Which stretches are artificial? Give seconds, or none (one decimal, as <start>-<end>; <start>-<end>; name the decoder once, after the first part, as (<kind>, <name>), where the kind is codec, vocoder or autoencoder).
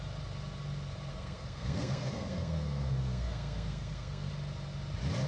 1.1-4.3 (codec, SNAC)